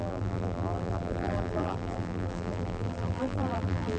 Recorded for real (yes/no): no